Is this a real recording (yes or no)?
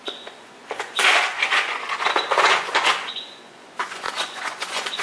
no